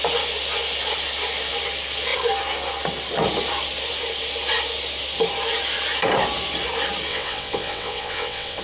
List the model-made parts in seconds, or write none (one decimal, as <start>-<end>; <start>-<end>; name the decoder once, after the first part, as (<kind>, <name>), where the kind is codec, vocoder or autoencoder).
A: 7.1-8.6 (vocoder, WaveNeXt)